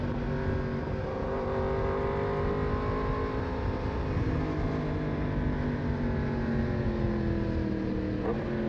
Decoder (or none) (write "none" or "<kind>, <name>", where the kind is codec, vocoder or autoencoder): none